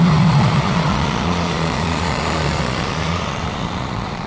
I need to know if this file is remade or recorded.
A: remade